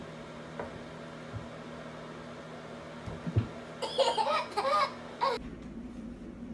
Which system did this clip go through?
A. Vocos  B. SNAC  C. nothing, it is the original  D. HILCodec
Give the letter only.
C